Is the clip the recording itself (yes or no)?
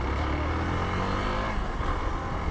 yes